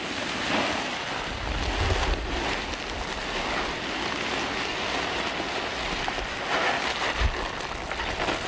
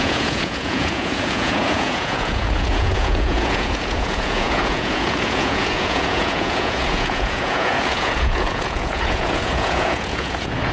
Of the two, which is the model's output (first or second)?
second